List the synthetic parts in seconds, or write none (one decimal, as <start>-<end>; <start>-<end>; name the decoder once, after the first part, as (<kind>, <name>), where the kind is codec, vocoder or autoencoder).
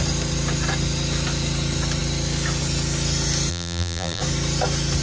3.5-4.2 (vocoder, BigVGAN v2)